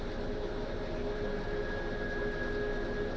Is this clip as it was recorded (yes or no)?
yes